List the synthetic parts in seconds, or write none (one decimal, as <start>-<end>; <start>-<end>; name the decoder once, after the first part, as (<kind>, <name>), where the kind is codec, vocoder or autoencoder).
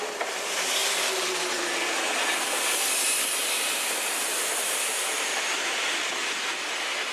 none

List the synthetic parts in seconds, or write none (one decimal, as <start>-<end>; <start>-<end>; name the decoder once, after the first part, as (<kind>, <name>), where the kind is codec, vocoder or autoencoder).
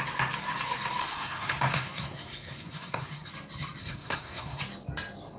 1.0-3.3 (codec, SNAC); 3.8-4.6